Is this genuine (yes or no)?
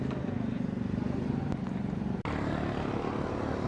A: yes